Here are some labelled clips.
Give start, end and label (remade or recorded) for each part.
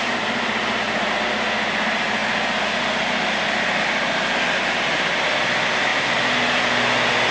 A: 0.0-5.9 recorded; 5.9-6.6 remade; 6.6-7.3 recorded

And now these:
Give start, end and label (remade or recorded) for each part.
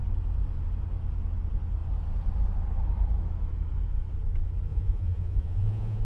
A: 0.0-4.7 recorded; 4.7-6.0 remade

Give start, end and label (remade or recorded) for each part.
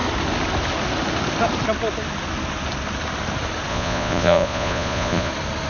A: 0.0-3.7 recorded; 3.7-5.3 remade; 5.3-5.7 recorded